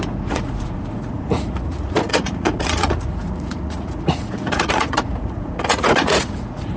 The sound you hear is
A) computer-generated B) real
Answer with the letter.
A